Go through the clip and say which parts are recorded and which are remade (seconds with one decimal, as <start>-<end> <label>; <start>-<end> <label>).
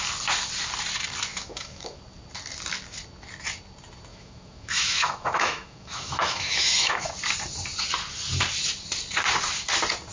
0.0-1.3 recorded; 1.3-2.0 remade; 2.0-4.1 recorded; 4.1-7.1 remade; 7.1-10.1 recorded